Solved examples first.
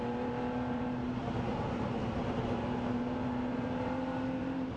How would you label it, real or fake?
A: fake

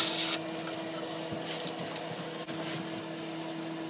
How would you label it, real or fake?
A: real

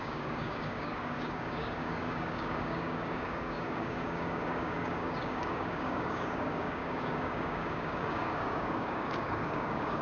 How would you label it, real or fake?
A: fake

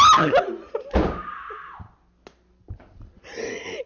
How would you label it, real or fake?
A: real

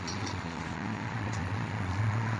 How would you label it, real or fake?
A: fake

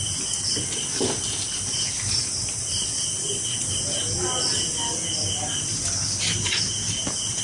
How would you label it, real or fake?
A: real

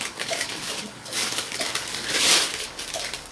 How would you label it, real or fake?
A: fake